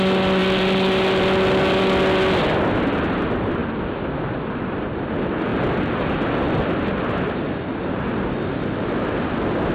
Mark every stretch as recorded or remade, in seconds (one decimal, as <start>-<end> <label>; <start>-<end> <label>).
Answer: 0.0-9.7 recorded